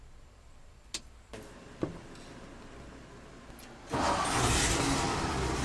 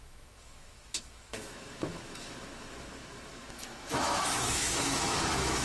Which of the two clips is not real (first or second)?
second